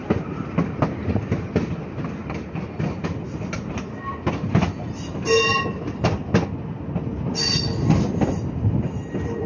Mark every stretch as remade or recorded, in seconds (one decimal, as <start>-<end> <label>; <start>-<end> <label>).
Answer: 0.0-9.5 recorded